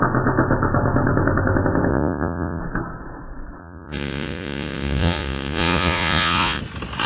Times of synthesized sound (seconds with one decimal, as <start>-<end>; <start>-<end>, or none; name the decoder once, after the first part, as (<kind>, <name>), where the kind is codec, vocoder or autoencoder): 1.9-2.6 (vocoder, Vocos); 3.6-6.6

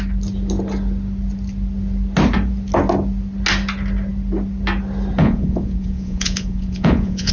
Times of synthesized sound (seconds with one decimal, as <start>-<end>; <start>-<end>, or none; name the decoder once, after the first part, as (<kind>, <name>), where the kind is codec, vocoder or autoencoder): 5.2-7.3 (vocoder, Vocos)

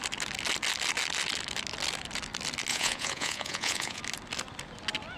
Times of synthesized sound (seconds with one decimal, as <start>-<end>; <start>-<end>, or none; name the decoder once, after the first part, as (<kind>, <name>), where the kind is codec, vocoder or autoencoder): 2.7-4.0 (vocoder, Vocos)

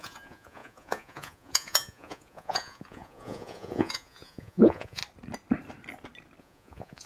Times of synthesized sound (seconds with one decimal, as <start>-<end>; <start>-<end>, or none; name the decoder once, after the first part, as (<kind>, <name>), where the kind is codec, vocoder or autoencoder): 0.0-5.0 (vocoder, Vocos); 6.4-7.1